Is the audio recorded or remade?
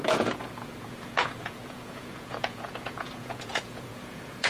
remade